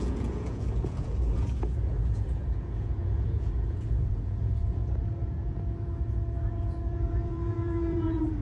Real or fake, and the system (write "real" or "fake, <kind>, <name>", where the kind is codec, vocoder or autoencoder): fake, vocoder, Vocos